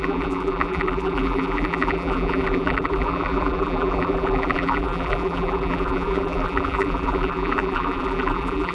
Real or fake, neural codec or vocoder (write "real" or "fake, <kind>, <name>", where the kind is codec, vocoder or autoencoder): fake, vocoder, BigVGAN v2